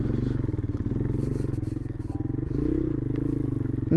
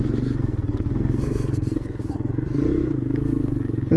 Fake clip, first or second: second